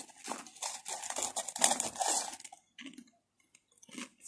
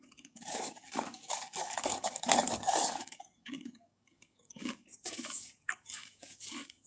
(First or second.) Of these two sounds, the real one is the first